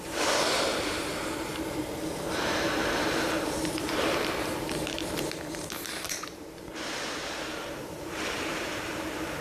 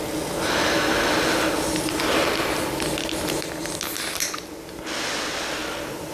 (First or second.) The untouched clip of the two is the second